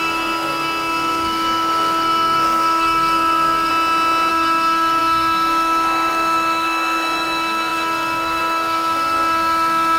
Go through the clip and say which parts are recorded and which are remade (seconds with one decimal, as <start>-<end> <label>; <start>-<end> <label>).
0.0-3.7 remade; 3.7-4.3 recorded; 4.3-10.0 remade